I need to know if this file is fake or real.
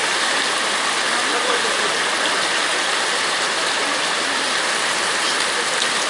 real